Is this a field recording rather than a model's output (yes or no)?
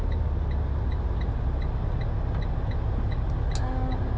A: yes